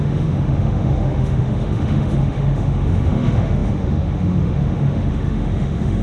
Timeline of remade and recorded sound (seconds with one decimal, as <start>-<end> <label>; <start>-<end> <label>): 0.0-6.0 remade